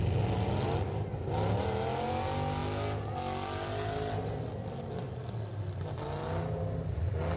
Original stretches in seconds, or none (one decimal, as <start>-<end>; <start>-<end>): 0.0-7.4